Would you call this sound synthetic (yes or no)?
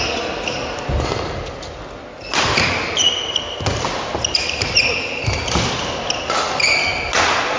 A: no